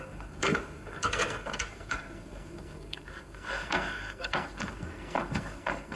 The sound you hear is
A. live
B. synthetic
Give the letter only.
B